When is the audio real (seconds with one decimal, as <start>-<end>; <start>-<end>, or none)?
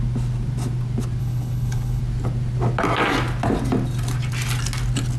0.0-1.2; 2.0-5.2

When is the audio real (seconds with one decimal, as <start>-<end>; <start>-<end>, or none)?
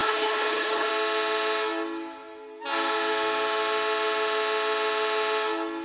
0.9-5.8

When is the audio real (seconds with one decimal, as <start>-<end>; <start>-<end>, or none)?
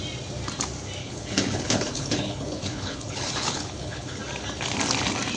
0.0-1.0; 4.2-5.4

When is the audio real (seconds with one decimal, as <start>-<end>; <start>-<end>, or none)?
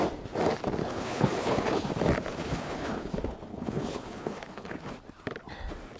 0.0-0.8; 1.9-2.4; 3.1-3.5; 4.9-6.0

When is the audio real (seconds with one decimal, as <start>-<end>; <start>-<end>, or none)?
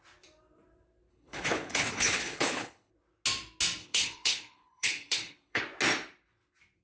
0.0-1.1; 2.9-3.8; 5.6-6.8